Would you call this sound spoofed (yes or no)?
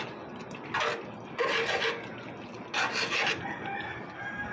no